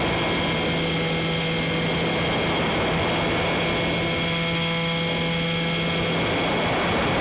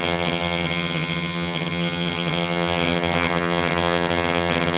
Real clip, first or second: first